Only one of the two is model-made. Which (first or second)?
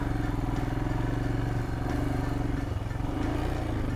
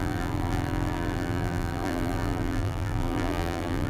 second